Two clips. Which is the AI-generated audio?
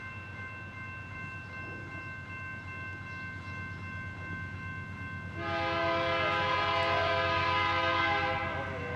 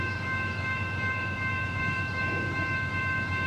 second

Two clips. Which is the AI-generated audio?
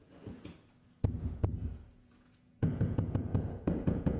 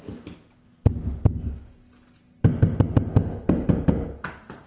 first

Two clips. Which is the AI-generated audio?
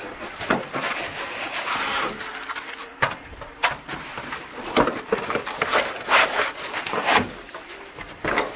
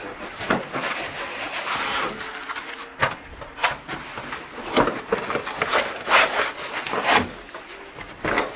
first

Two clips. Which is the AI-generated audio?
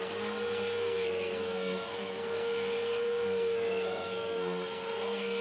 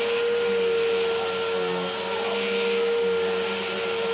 first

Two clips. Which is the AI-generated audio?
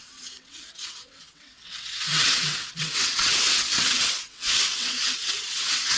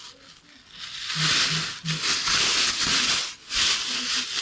first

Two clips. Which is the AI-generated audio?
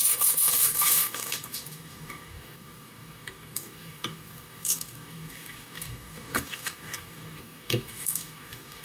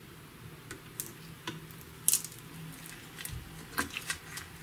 first